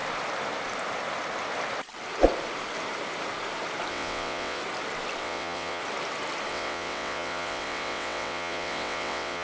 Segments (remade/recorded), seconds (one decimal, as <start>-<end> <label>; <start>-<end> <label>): 0.0-3.9 recorded; 3.9-4.6 remade; 4.6-5.2 recorded; 5.2-5.8 remade; 5.8-6.5 recorded; 6.5-9.4 remade